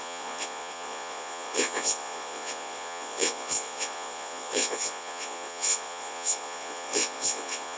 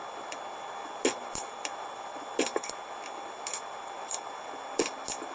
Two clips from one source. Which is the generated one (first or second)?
first